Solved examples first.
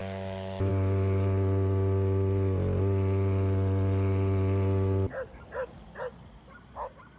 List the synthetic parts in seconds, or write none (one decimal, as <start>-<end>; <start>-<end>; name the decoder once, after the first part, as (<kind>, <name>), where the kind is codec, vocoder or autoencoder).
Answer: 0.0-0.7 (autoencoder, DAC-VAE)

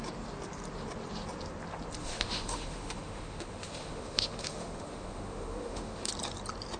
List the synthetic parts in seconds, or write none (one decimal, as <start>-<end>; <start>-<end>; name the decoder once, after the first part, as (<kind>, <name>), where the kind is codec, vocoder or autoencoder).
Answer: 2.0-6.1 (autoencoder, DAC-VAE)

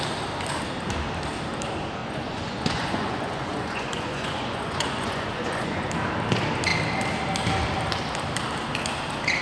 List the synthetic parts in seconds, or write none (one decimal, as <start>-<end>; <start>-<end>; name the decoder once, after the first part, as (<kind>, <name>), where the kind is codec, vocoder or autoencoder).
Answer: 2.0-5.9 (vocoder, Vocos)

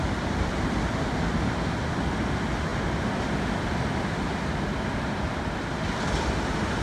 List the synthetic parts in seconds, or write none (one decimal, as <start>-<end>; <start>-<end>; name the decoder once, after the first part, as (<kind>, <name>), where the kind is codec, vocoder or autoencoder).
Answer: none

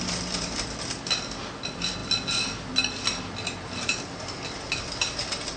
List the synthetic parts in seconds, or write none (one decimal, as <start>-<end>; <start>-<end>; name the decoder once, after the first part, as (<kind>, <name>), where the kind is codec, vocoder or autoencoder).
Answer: none